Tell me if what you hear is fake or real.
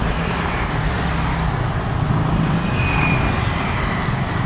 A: real